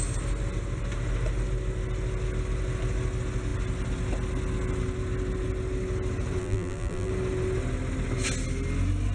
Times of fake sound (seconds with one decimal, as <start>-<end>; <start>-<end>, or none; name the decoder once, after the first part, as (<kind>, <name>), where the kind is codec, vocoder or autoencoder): 6.4-7.1 (vocoder, BigVGAN v2)